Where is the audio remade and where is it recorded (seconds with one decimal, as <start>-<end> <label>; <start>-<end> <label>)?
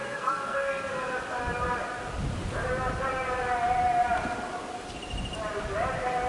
0.0-0.9 remade; 0.9-6.3 recorded